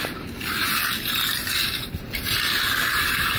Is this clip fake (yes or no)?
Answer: yes